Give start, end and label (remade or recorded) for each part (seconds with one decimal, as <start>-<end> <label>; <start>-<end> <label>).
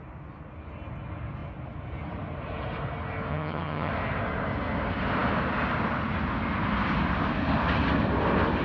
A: 0.0-3.3 recorded; 3.3-3.9 remade; 3.9-8.6 recorded